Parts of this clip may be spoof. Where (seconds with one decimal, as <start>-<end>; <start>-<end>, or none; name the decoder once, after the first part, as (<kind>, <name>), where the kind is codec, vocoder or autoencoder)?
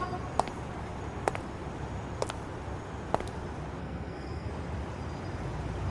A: 3.8-4.5 (codec, SNAC)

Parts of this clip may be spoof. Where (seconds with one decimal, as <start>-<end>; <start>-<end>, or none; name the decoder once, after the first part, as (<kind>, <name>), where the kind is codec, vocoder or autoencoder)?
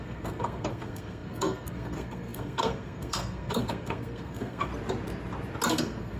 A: 0.0-4.7 (codec, SNAC); 5.7-6.2